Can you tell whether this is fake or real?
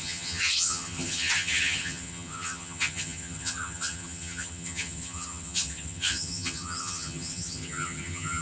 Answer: fake